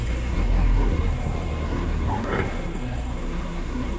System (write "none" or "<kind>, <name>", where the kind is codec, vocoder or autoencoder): codec, SNAC